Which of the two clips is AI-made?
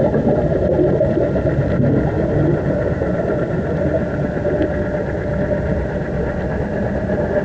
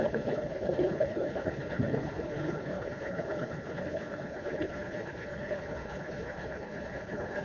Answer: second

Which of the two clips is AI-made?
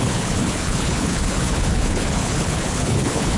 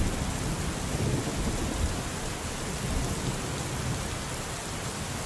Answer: first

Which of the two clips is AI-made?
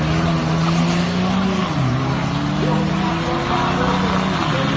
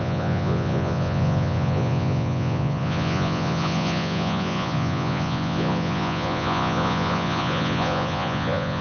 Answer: second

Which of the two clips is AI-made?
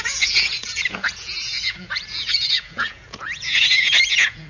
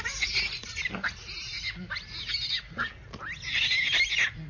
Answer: first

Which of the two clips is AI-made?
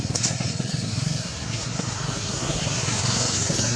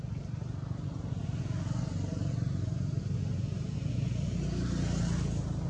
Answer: first